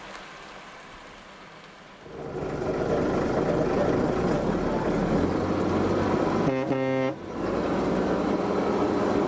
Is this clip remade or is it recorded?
recorded